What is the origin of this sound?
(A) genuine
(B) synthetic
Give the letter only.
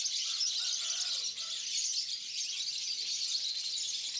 A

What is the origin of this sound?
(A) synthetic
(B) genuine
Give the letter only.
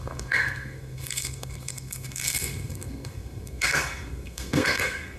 A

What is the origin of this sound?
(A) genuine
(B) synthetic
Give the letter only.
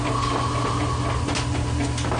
A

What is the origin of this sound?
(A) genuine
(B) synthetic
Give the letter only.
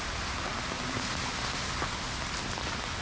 A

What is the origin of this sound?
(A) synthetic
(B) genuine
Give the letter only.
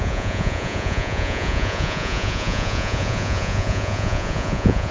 A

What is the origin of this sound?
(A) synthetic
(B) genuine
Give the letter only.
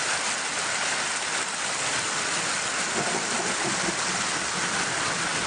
B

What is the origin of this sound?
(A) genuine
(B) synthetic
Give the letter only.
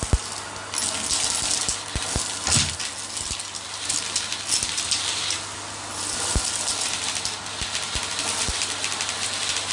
A